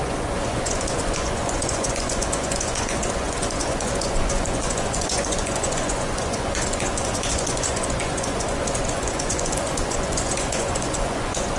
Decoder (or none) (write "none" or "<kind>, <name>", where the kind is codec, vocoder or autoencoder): vocoder, Vocos